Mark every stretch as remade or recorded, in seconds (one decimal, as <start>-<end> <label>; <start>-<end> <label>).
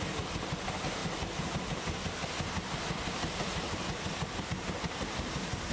0.0-5.7 recorded